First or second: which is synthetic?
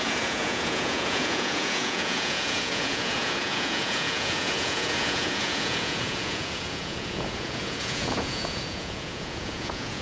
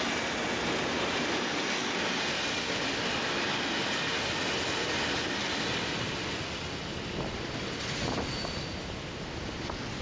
first